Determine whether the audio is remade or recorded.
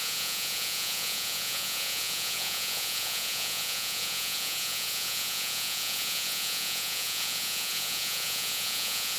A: remade